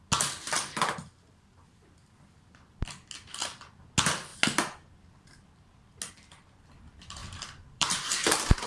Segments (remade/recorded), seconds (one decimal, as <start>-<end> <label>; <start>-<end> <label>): 0.0-7.2 recorded; 7.2-8.7 remade